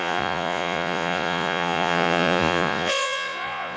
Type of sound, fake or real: fake